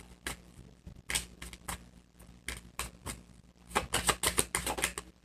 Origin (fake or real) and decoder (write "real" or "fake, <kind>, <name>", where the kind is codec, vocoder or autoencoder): real